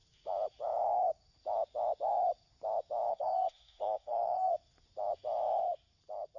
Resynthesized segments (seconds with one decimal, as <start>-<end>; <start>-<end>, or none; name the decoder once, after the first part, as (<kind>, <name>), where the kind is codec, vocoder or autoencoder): 3.1-4.5 (codec, SNAC)

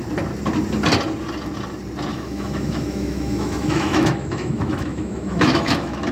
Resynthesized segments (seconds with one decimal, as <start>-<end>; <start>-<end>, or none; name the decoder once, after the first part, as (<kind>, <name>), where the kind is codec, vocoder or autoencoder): 2.1-6.1 (autoencoder, DAC-VAE)

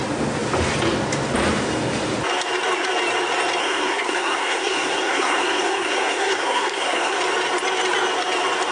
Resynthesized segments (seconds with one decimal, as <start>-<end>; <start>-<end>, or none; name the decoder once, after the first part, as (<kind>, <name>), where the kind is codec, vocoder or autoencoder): 3.6-7.2 (codec, SNAC)

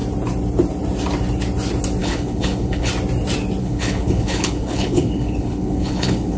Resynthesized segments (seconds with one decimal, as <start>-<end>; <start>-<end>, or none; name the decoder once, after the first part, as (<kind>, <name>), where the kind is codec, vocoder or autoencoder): 2.0-2.9 (codec, HILCodec); 3.6-6.4

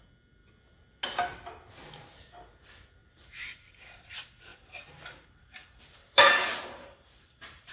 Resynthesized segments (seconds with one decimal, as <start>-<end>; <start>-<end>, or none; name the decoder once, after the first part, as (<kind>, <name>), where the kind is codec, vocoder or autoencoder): 3.0-4.1 (vocoder, BigVGAN v2); 4.5-7.7

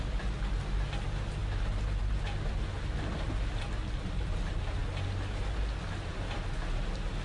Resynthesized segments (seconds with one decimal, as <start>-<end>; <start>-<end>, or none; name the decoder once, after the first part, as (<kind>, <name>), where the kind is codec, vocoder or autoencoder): none

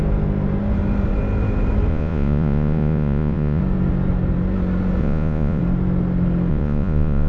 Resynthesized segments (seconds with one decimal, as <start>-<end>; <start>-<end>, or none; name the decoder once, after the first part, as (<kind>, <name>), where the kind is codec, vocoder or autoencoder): 1.9-3.6 (vocoder, Vocos); 5.0-5.6; 6.5-7.3

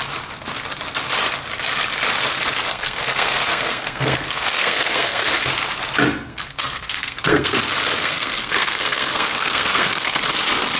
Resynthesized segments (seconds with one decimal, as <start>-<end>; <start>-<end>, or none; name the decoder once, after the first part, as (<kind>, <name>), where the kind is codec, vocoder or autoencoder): 2.7-5.3 (codec, SNAC); 6.3-7.6; 8.0-10.2